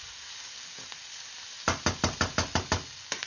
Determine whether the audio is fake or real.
real